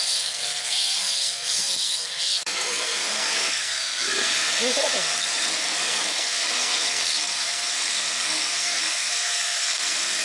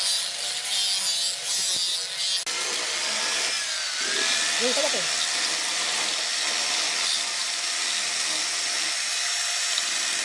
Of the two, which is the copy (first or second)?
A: first